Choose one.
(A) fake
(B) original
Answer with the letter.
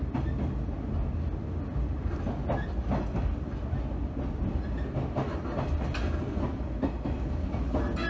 B